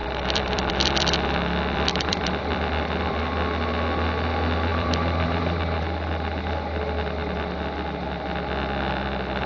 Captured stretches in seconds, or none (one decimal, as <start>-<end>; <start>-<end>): 3.2-4.7; 5.8-9.5

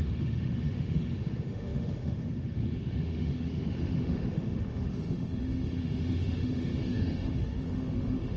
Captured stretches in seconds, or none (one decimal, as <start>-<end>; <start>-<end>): none

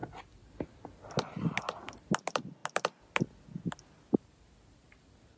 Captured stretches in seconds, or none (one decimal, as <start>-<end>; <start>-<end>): 0.0-5.4

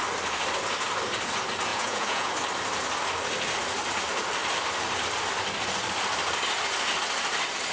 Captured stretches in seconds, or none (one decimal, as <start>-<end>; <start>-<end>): 0.0-1.7; 2.3-7.7